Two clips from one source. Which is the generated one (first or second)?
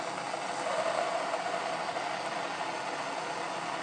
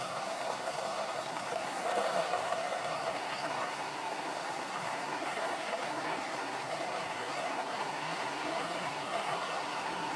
second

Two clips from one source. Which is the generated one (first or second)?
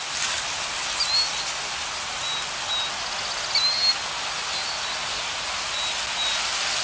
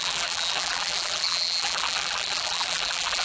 second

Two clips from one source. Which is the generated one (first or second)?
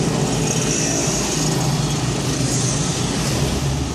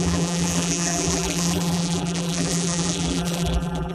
second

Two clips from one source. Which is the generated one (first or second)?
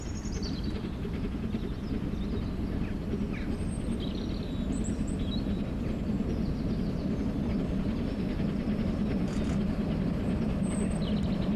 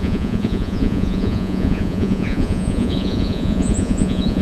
second